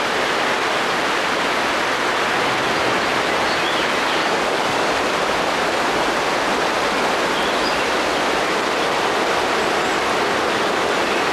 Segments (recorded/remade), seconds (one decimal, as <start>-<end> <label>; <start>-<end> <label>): 0.0-4.2 recorded; 4.2-4.9 remade; 4.9-11.3 recorded